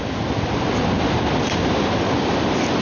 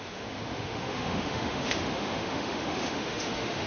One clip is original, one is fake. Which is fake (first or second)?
second